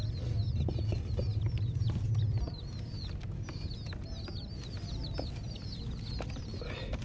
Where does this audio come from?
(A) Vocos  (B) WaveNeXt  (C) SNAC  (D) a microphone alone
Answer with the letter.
D